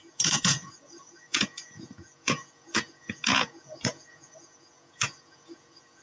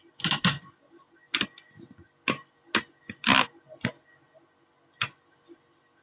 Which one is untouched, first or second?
second